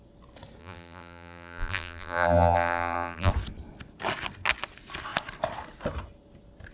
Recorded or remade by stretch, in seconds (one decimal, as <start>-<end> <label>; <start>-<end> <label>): 0.0-0.6 recorded; 0.6-3.3 remade; 3.3-6.7 recorded